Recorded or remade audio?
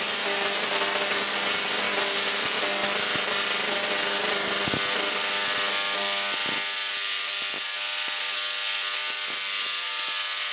recorded